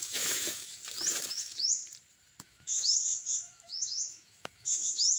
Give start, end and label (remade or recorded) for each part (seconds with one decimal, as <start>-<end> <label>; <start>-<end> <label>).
0.0-0.8 remade; 0.8-1.3 recorded; 1.3-1.8 remade; 1.8-2.4 recorded; 2.4-5.2 remade